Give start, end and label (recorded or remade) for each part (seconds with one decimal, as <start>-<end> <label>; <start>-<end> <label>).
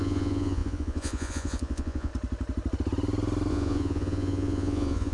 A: 0.0-2.1 remade; 2.1-3.5 recorded; 3.5-5.1 remade